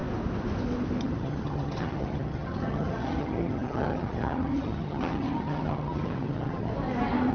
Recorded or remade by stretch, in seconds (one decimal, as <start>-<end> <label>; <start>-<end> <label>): 0.0-1.0 recorded; 1.0-6.7 remade; 6.7-7.3 recorded